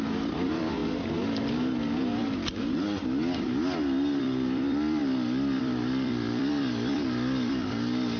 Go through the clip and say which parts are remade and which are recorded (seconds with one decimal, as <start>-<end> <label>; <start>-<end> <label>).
0.0-0.8 remade; 0.8-4.2 recorded; 4.2-5.0 remade; 5.0-5.6 recorded; 5.6-8.2 remade